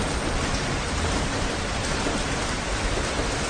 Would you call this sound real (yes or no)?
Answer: yes